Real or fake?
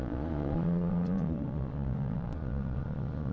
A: fake